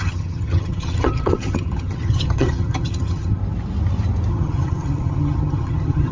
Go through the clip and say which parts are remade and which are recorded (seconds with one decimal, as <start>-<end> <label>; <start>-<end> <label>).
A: 0.0-3.4 remade; 3.4-4.3 recorded; 4.3-6.1 remade

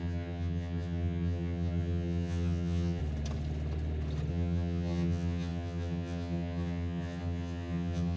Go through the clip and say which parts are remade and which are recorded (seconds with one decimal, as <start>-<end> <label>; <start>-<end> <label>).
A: 0.0-3.0 remade; 3.0-4.3 recorded; 4.3-8.2 remade

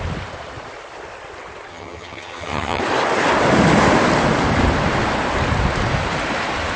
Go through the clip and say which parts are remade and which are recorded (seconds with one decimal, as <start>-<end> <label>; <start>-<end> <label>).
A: 0.0-1.7 recorded; 1.7-2.8 remade; 2.8-6.8 recorded

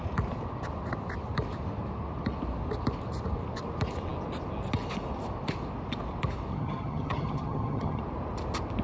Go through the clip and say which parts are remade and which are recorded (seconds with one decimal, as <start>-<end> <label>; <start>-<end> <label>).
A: 0.0-6.5 recorded; 6.5-8.0 remade; 8.0-8.8 recorded